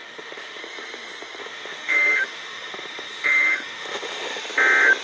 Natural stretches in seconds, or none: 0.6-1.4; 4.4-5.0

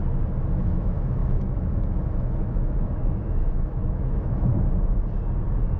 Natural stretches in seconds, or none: 0.0-0.6; 4.5-5.8

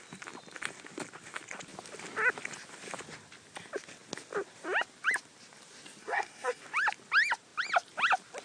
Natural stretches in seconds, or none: 0.0-6.0; 6.6-8.4